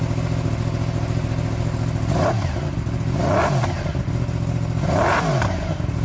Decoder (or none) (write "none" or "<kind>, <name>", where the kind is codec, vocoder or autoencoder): none